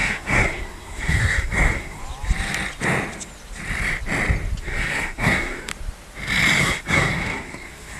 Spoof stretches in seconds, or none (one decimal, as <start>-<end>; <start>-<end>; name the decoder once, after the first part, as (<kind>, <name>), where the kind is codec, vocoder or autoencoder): 0.0-2.0 (codec, SNAC); 4.6-5.7; 6.6-8.0